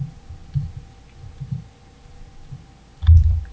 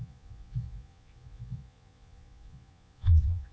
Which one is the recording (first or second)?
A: first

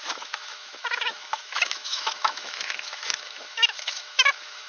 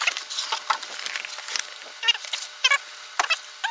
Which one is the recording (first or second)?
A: second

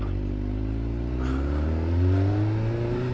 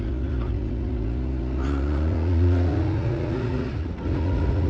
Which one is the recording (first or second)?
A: first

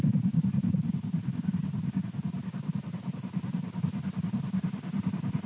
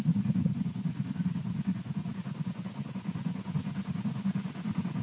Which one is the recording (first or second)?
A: first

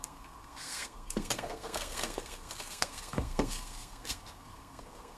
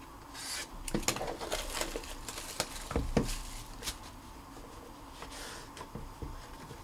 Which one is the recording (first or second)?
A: second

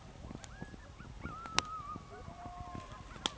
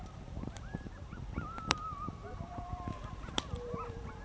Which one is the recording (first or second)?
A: first